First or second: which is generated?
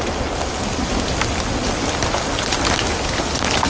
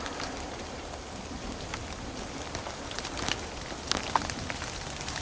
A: second